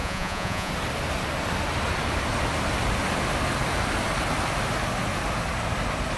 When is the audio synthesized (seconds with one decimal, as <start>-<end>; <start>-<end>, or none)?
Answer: 0.0-0.7